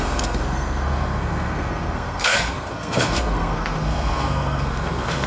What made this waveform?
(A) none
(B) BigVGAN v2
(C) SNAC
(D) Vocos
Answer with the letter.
C